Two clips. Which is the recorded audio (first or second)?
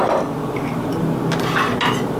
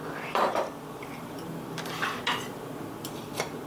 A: first